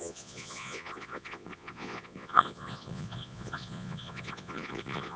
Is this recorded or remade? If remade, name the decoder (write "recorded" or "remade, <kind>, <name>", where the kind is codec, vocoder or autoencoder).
remade, vocoder, Vocos